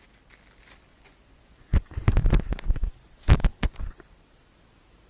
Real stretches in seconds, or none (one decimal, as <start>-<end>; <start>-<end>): 0.0-0.9; 2.3-3.5; 4.0-5.1